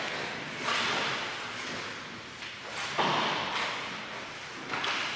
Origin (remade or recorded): recorded